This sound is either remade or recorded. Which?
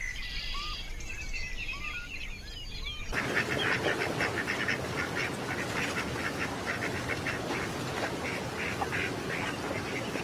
recorded